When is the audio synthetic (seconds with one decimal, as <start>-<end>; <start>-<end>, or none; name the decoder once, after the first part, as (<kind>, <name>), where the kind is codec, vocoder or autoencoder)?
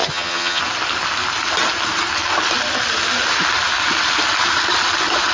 0.0-0.6 (vocoder, HiFi-GAN)